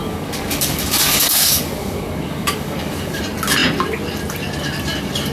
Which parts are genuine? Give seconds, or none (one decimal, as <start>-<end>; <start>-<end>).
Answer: 3.2-5.3